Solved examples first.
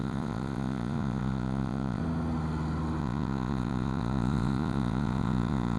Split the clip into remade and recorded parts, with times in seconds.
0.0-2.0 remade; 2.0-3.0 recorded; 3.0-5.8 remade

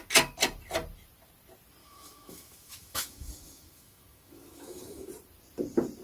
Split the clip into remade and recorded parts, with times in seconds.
0.0-1.8 recorded; 1.8-5.1 remade; 5.1-6.0 recorded

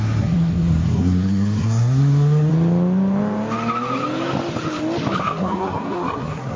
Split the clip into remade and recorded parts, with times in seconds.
0.0-2.5 remade; 2.5-5.2 recorded; 5.2-6.6 remade

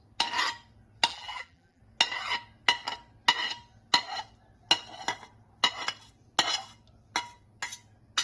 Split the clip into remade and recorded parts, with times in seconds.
0.0-1.1 recorded; 1.1-1.8 remade; 1.8-8.2 recorded

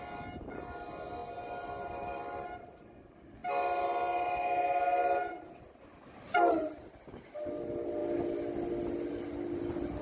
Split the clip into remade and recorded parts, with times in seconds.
0.0-10.0 recorded

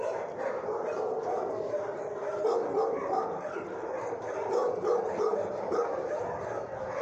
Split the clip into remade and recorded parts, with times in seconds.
0.0-3.0 recorded; 3.0-4.2 remade; 4.2-5.3 recorded; 5.3-6.2 remade; 6.2-7.0 recorded

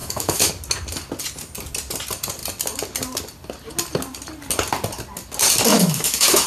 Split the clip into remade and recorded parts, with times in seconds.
0.0-0.5 remade; 0.5-5.7 recorded; 5.7-6.5 remade